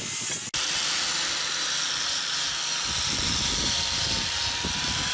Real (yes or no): yes